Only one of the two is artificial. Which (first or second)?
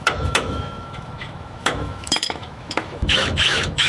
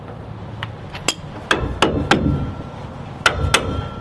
first